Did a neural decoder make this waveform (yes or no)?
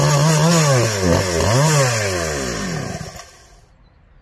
no